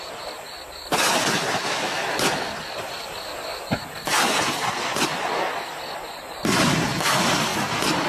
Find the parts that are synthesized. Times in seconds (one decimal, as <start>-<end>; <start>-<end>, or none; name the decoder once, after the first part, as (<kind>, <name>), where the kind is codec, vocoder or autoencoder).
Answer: 0.0-7.5 (vocoder, BigVGAN v2)